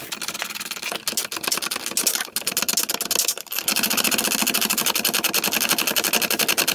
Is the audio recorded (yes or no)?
yes